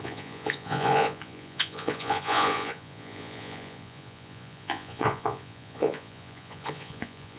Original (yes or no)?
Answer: no